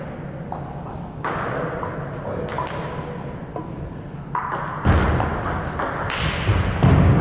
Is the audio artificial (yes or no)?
no